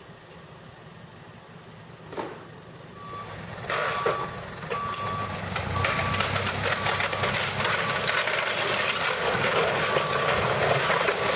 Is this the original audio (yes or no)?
yes